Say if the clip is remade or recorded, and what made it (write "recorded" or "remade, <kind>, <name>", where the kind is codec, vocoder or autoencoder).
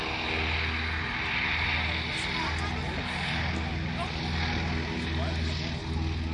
recorded